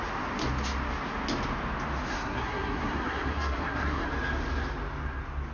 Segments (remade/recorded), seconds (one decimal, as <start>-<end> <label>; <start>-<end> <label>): 0.0-2.1 recorded; 2.1-4.1 remade; 4.1-5.5 recorded